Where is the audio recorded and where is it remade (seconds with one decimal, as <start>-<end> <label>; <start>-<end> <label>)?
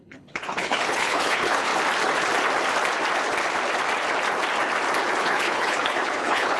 0.0-1.7 remade; 1.7-5.2 recorded; 5.2-6.6 remade